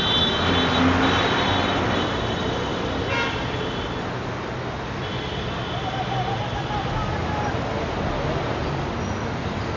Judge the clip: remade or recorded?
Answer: recorded